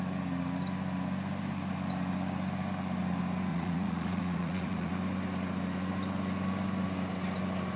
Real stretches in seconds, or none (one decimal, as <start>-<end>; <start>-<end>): 0.0-3.5; 4.9-7.8